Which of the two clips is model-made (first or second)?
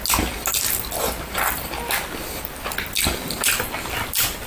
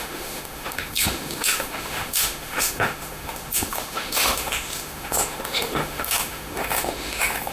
second